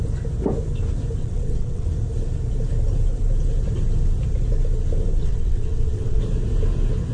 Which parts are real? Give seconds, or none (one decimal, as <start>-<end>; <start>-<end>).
0.0-1.2; 1.9-5.2; 6.2-7.1